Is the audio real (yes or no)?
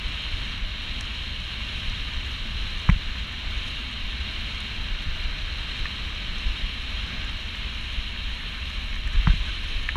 yes